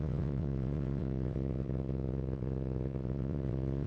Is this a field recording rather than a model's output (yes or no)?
no